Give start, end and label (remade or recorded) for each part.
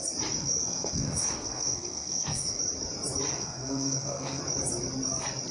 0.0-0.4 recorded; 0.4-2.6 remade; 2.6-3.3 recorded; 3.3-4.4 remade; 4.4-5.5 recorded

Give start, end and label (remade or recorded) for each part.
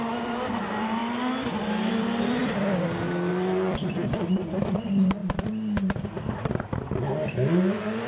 0.0-1.0 remade; 1.0-1.9 recorded; 1.9-2.4 remade; 2.4-3.3 recorded; 3.3-5.2 remade; 5.2-7.6 recorded; 7.6-8.1 remade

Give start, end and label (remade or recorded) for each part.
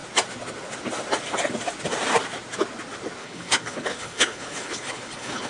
0.0-3.2 recorded; 3.2-5.5 remade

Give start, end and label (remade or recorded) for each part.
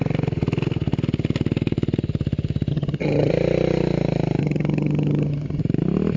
0.0-2.7 recorded; 2.7-3.3 remade; 3.3-4.4 recorded; 4.4-5.6 remade; 5.6-6.2 recorded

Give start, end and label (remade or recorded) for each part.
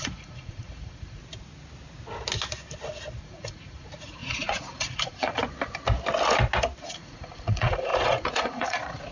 0.0-1.2 remade; 1.2-3.2 recorded; 3.2-5.4 remade; 5.4-6.8 recorded; 6.8-9.1 remade